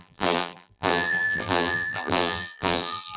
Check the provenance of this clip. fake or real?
fake